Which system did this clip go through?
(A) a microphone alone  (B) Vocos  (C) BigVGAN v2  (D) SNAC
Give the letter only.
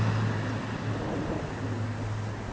A